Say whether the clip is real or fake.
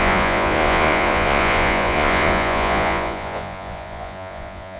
fake